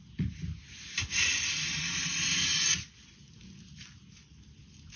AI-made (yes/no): no